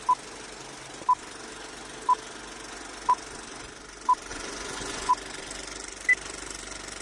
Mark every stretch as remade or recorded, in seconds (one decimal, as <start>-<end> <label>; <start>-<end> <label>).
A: 0.0-4.3 recorded; 4.3-5.1 remade; 5.1-7.0 recorded